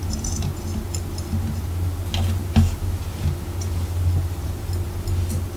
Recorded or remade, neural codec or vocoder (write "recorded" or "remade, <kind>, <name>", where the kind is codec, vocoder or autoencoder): recorded